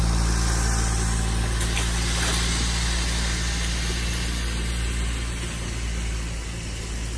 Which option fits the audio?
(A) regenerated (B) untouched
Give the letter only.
B